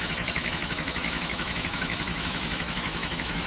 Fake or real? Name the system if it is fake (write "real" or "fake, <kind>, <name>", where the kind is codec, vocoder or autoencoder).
fake, autoencoder, DAC-VAE